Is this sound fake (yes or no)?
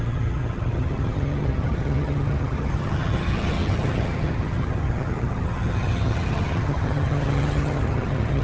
yes